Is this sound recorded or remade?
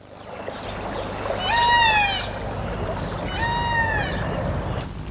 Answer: recorded